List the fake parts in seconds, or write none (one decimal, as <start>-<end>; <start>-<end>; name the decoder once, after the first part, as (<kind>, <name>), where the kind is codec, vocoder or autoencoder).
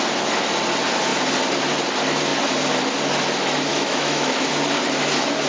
3.7-4.5 (autoencoder, DAC-VAE)